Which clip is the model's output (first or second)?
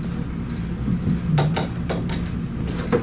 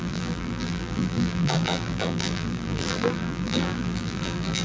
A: second